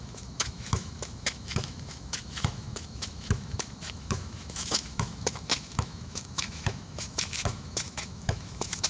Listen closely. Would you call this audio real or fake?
fake